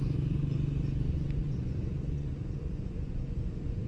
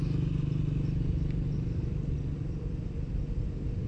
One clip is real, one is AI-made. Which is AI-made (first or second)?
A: first